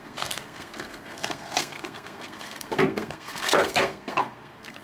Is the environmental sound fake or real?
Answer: fake